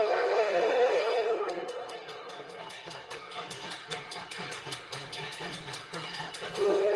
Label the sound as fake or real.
fake